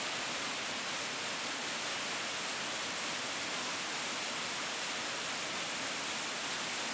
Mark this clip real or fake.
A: fake